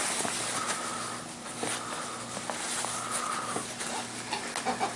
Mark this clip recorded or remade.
recorded